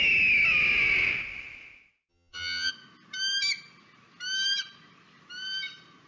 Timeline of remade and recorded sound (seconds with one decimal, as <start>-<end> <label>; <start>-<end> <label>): 0.0-2.1 recorded; 2.1-2.7 remade; 2.7-6.1 recorded